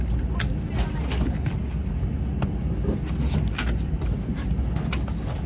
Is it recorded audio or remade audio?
recorded